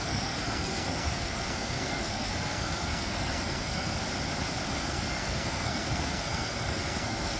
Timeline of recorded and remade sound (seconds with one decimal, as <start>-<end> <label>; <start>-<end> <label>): 0.0-4.0 remade; 4.0-4.7 recorded; 4.7-7.4 remade